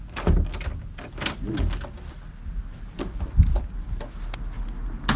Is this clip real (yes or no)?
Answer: yes